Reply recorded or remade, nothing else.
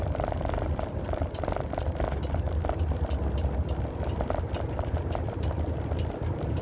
recorded